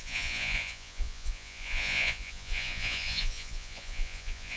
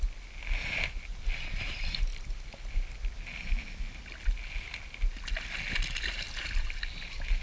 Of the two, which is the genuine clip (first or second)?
second